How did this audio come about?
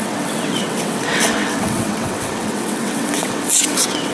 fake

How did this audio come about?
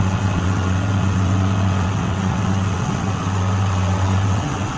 fake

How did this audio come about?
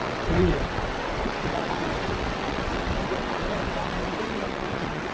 fake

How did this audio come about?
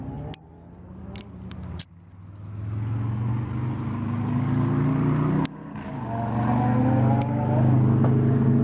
real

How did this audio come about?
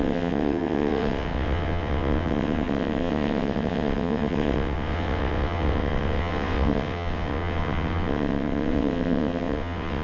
fake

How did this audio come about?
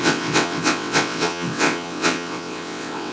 fake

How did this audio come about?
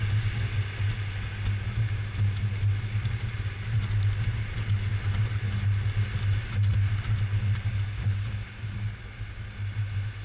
real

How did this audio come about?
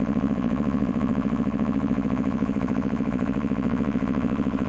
fake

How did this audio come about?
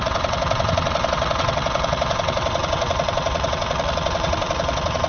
fake